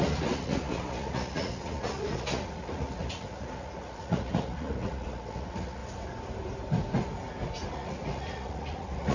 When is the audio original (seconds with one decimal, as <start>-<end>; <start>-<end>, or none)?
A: 5.8-7.7